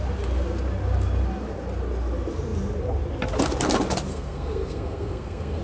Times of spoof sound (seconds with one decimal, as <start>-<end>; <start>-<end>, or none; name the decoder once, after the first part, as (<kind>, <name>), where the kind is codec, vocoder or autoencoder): 4.1-5.6 (codec, SNAC)